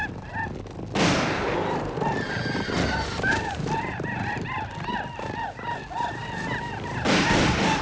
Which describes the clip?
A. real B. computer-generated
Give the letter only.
A